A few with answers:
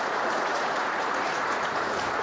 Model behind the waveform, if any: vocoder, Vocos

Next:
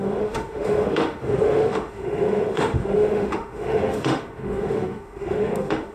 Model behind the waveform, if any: autoencoder, DAC-VAE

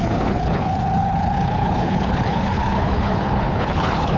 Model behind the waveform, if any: codec, HILCodec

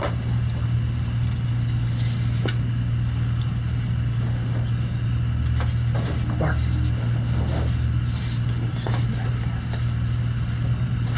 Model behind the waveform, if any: none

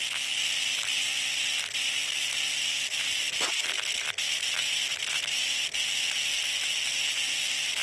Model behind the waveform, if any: none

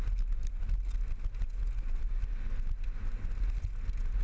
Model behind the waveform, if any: none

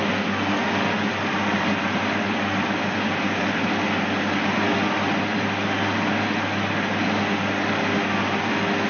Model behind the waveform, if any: none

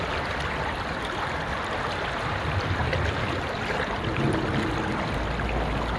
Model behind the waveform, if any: none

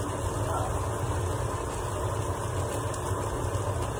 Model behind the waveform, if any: none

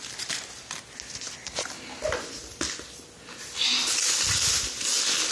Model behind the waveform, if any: none